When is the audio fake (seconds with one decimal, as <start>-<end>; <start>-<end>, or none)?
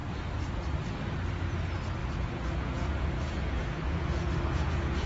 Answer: 2.0-5.1